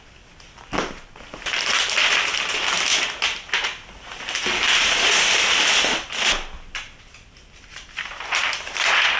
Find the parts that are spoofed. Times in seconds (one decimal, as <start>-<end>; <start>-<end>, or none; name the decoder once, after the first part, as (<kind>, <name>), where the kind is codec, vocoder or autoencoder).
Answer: none